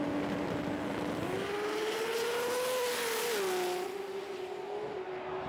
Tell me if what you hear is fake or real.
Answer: real